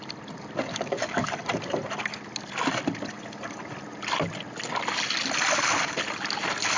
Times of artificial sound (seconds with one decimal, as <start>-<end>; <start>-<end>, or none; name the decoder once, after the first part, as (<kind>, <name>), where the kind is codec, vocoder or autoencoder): 0.7-1.3 (codec, DAC)

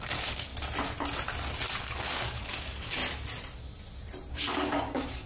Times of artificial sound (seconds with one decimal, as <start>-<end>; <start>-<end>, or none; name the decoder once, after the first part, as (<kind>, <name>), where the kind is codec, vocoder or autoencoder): 0.0-0.5 (codec, DAC); 1.8-3.0; 4.3-5.3

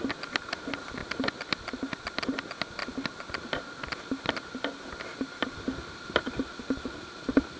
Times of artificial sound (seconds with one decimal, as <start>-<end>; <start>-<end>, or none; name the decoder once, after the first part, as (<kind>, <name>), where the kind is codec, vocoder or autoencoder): none

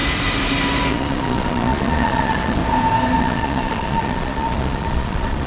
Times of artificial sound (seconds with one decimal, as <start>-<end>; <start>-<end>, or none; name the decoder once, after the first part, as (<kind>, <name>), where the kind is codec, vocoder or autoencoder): 0.9-2.6 (vocoder, Vocos); 3.2-5.5

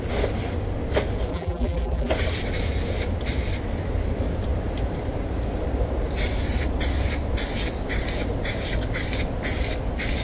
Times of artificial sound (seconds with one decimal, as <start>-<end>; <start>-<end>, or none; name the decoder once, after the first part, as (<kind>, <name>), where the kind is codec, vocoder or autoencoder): 1.3-2.1 (vocoder, BigVGAN v2)

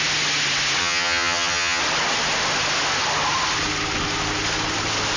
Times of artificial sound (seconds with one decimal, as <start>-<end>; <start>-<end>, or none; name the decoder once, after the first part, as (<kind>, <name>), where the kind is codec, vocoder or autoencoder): 0.8-1.8 (vocoder, HiFi-GAN)

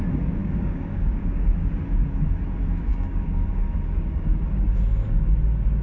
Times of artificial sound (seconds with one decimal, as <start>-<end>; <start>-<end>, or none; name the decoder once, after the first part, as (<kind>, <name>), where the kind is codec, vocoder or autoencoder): 0.4-1.7 (codec, DAC); 2.9-5.3